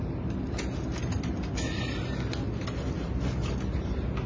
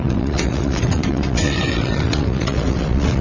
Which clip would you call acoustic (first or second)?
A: first